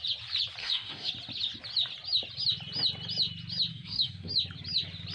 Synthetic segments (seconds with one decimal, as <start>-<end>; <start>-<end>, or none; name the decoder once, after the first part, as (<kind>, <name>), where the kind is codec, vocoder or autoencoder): 0.6-1.1 (autoencoder, DAC-VAE); 3.7-4.3